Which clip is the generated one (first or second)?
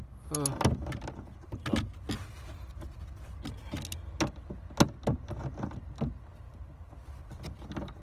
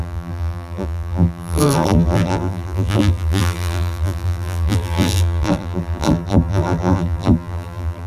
second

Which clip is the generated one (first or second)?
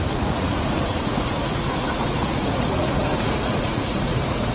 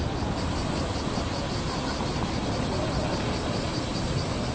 first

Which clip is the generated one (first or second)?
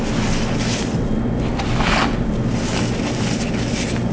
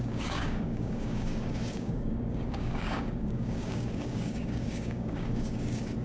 second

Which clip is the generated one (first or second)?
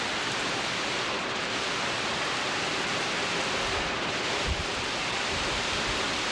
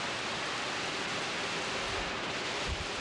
first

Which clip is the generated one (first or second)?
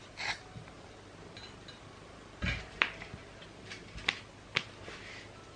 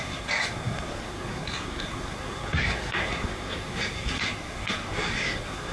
second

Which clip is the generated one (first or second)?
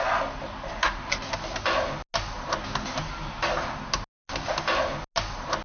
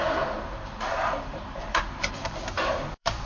second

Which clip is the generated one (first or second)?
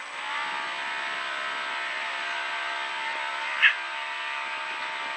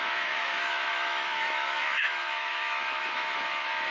second